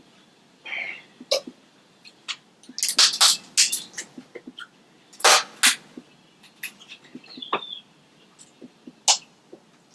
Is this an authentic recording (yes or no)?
yes